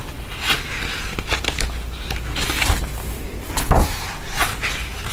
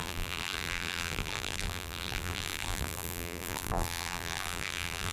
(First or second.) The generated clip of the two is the second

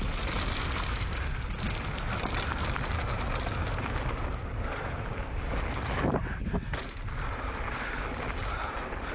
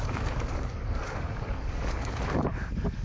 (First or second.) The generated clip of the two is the second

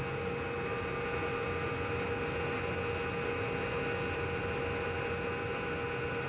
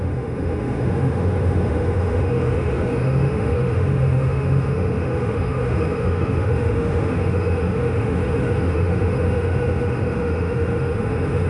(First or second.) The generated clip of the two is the second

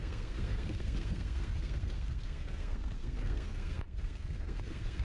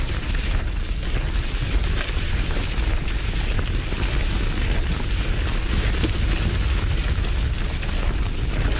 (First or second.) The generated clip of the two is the first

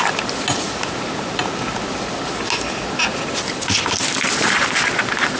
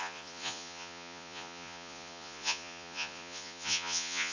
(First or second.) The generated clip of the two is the second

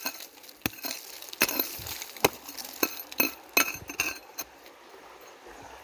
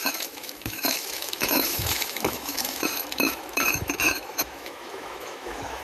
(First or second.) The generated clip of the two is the second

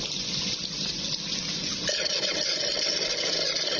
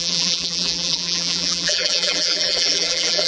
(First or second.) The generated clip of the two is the second